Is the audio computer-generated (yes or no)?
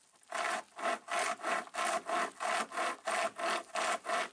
no